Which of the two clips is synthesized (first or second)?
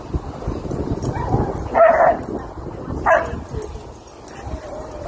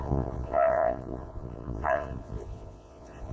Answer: second